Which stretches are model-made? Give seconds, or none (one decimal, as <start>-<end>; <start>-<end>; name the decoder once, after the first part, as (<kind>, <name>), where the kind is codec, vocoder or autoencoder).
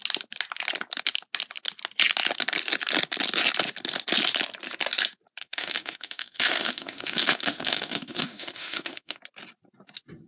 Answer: 5.4-9.2 (autoencoder, DAC-VAE)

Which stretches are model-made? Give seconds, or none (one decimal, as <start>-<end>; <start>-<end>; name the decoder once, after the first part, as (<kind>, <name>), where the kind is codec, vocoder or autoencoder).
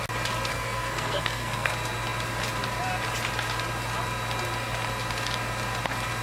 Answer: 0.5-1.7 (codec, SNAC)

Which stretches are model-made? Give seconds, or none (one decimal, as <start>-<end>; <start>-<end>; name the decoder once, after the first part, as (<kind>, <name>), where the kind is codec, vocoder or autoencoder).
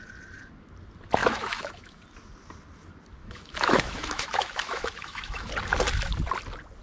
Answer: 1.2-2.0 (autoencoder, DAC-VAE); 3.2-5.5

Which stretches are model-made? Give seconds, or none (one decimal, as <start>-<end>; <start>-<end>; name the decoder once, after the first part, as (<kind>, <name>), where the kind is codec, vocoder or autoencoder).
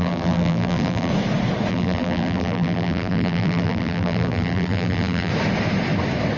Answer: 0.0-1.1 (vocoder, BigVGAN v2); 1.7-5.3